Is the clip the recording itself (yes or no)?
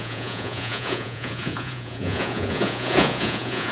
no